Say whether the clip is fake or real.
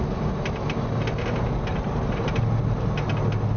real